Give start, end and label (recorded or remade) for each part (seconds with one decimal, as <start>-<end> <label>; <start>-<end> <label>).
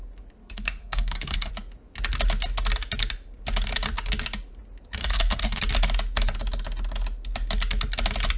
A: 0.0-0.4 recorded; 0.4-1.5 remade; 1.5-5.0 recorded; 5.0-5.6 remade; 5.6-8.4 recorded